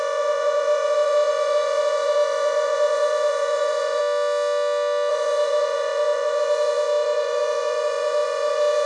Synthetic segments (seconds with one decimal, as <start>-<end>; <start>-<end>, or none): 0.0-4.0; 5.1-8.9